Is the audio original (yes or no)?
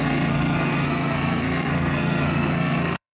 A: no